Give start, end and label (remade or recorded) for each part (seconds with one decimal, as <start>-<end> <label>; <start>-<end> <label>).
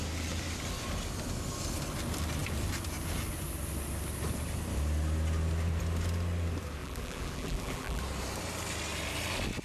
0.0-6.8 recorded; 6.8-8.0 remade; 8.0-9.6 recorded